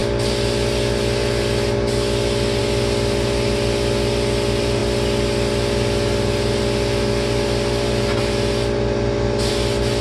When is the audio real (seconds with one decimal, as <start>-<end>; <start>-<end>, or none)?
0.0-10.0